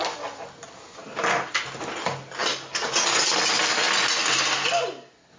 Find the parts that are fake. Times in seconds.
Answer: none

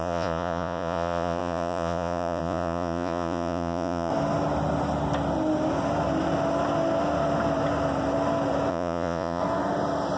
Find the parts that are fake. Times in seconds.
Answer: 0.0-4.1 (vocoder, Vocos); 8.7-9.4

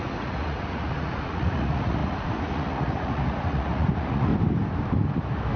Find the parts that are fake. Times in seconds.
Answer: 0.0-4.3 (vocoder, Vocos)